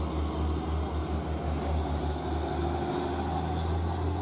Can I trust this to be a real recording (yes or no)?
yes